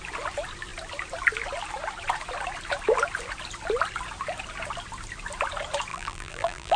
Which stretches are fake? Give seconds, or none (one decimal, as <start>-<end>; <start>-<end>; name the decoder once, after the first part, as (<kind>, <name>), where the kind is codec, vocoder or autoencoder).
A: 5.9-6.8 (vocoder, BigVGAN v2)